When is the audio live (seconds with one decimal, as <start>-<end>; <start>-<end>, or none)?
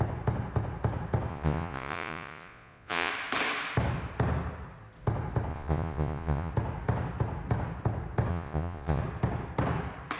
0.0-1.3; 3.1-5.5; 6.5-8.3; 9.0-10.2